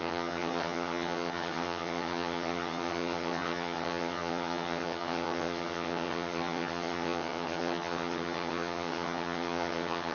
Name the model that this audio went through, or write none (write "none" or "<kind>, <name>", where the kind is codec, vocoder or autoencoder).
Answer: vocoder, HiFi-GAN